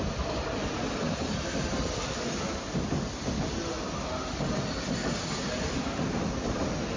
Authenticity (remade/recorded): recorded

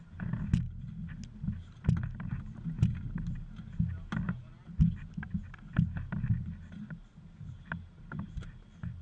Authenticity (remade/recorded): recorded